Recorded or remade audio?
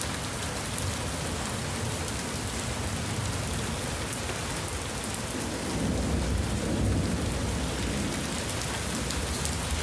recorded